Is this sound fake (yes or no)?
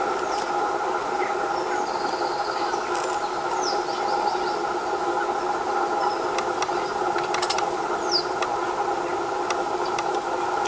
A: no